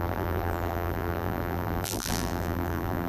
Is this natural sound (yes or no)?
no